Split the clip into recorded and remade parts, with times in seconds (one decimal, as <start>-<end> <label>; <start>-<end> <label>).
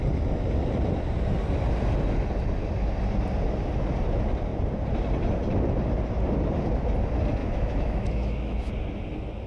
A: 0.0-7.4 recorded; 7.4-8.7 remade; 8.7-9.5 recorded